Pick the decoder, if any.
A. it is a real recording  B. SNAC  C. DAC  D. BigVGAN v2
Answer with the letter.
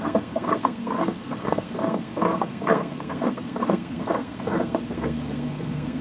B